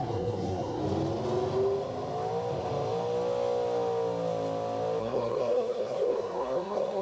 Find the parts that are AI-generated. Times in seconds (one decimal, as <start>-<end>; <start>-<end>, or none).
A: 0.0-0.8; 5.0-7.0